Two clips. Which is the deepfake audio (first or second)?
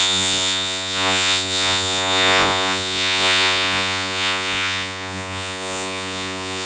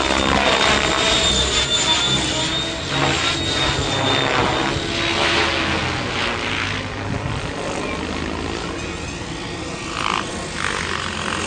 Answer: first